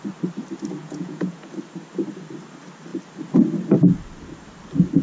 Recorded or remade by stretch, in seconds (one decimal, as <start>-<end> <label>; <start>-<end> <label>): 0.0-0.8 recorded; 0.8-1.5 remade; 1.5-5.0 recorded